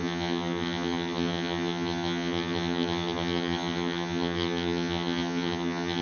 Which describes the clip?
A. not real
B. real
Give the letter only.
A